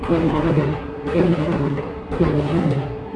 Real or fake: fake